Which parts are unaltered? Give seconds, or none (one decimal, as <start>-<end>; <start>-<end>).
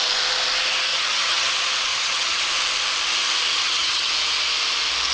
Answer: 0.0-0.9; 1.5-1.9; 2.4-3.6; 4.1-5.1